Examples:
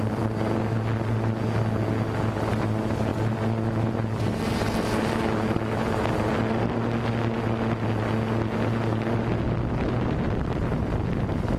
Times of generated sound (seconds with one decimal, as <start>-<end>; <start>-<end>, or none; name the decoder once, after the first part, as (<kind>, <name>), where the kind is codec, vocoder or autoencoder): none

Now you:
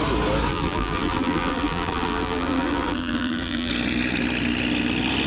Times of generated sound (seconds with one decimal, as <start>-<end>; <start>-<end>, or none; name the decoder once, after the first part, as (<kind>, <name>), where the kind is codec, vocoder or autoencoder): 0.5-3.7 (vocoder, BigVGAN v2)

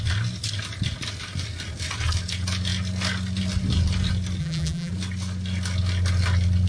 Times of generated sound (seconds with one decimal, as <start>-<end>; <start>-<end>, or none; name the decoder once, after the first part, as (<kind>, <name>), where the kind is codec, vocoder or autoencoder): 4.4-4.9 (vocoder, BigVGAN v2)

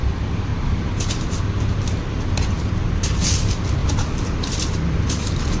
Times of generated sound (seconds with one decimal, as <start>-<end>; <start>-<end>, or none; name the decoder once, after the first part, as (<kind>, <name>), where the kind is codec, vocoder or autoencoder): 0.0-0.5 (vocoder, BigVGAN v2); 2.0-5.6

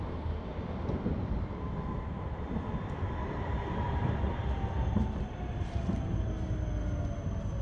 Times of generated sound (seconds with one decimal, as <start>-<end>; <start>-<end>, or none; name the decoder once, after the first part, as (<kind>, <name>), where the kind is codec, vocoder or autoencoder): 1.2-5.8 (vocoder, BigVGAN v2)

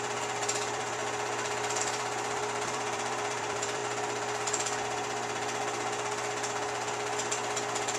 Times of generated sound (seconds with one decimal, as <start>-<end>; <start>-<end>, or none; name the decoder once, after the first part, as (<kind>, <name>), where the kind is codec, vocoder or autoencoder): 0.0-1.0 (vocoder, BigVGAN v2); 1.8-3.8